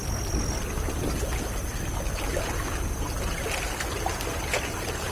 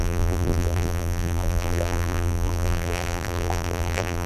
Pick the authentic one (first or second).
first